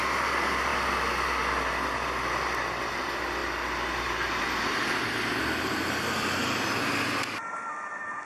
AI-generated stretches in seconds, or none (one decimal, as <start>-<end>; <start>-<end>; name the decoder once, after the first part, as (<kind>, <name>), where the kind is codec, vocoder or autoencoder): none